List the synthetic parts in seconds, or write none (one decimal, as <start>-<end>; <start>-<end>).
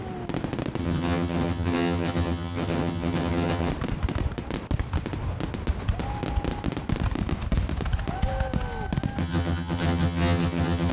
0.8-3.7; 9.2-10.9